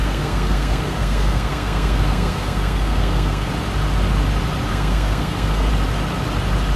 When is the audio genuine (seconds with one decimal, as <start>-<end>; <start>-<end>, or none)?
3.5-4.7; 5.7-6.8